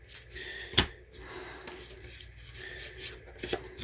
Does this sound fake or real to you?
real